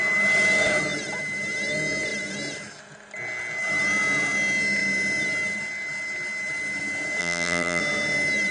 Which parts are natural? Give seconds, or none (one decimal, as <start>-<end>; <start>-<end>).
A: 0.0-7.2; 7.8-8.5